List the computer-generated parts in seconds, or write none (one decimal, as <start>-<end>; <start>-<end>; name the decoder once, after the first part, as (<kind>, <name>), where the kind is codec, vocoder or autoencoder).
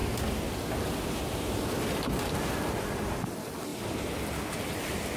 none